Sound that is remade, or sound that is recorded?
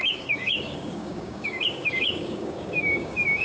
remade